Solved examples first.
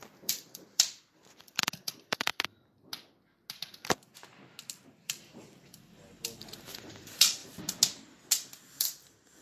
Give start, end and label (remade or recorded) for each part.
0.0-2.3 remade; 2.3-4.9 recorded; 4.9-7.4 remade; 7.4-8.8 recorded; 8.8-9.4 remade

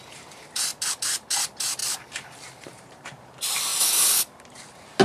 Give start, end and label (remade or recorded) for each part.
0.0-1.8 recorded; 1.8-3.2 remade; 3.2-5.0 recorded

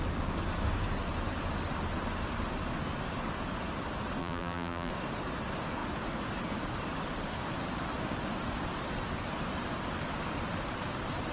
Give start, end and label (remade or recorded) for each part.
0.0-4.2 recorded; 4.2-4.9 remade; 4.9-11.3 recorded

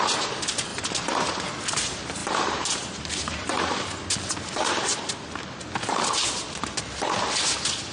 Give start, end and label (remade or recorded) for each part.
0.0-0.7 recorded; 0.7-1.3 remade; 1.3-2.2 recorded; 2.2-3.8 remade; 3.8-7.9 recorded

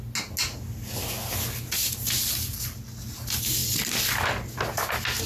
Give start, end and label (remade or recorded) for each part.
0.0-5.3 recorded

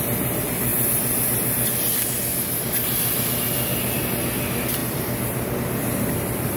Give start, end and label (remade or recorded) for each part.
0.0-0.7 recorded; 0.7-2.1 remade; 2.1-4.8 recorded; 4.8-5.5 remade; 5.5-6.6 recorded